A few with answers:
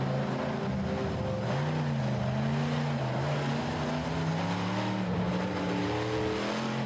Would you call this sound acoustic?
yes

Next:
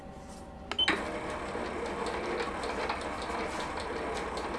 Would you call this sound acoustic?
yes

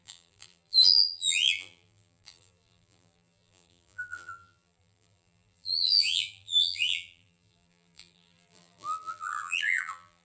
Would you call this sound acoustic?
no